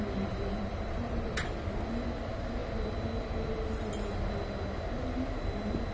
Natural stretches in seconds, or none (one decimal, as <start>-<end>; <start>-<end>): 0.0-5.9